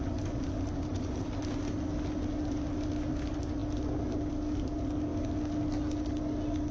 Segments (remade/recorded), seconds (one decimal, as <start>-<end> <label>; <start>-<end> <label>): 0.0-6.7 recorded